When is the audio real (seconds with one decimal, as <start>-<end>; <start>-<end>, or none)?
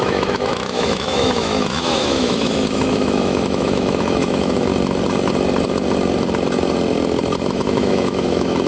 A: 4.7-7.5